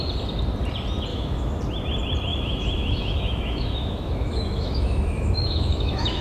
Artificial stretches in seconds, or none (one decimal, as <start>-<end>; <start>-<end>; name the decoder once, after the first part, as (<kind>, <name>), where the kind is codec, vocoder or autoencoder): 1.1-1.6 (autoencoder, DAC-VAE); 2.3-6.2